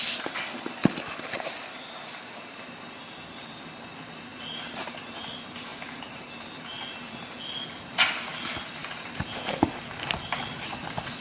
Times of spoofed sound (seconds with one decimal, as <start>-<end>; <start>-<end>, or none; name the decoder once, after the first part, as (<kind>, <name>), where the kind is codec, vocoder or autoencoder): 4.3-4.8 (vocoder, BigVGAN v2); 5.7-7.4; 8.8-9.7